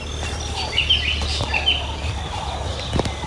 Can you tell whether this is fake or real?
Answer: real